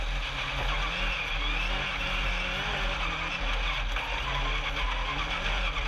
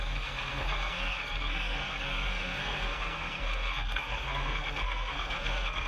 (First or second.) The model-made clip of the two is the second